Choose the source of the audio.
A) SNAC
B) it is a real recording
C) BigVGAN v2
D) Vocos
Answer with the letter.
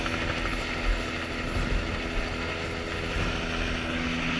B